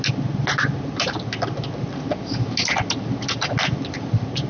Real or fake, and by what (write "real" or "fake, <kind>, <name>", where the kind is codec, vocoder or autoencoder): real